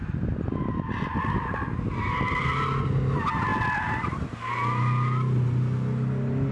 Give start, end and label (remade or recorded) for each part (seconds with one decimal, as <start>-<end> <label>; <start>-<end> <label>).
0.0-6.5 recorded